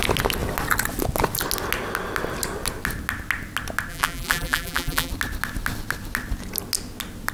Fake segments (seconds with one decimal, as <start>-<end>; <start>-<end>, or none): 3.9-5.1